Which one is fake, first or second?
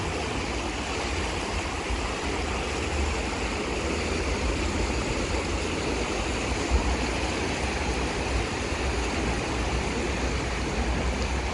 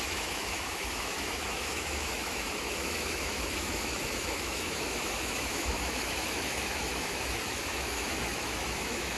second